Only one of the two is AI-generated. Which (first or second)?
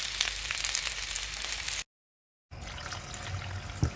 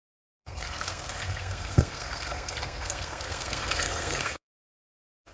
second